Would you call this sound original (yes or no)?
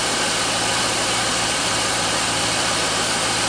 no